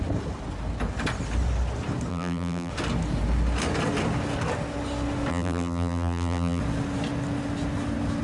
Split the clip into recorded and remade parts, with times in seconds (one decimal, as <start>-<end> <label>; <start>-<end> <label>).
0.0-2.1 recorded; 2.1-2.7 remade; 2.7-5.3 recorded; 5.3-6.6 remade; 6.6-8.2 recorded